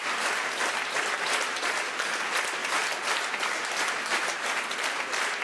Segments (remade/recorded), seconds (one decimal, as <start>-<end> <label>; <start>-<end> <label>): 0.0-5.4 recorded